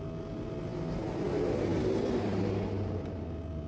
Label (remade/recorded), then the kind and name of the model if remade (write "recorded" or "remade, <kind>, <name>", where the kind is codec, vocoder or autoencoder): recorded